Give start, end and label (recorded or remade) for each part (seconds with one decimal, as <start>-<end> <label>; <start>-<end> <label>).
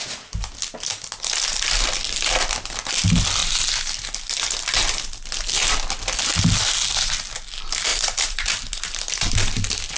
0.0-7.9 recorded; 7.9-9.1 remade; 9.1-10.0 recorded